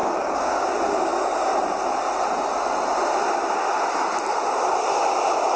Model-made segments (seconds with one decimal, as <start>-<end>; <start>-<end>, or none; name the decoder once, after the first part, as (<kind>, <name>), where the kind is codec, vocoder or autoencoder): 0.0-0.7 (codec, DAC)